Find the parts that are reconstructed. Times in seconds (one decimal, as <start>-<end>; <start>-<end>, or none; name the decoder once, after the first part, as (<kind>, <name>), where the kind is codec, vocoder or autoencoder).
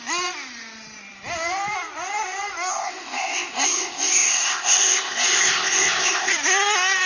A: 2.7-6.3 (codec, ZipCodec)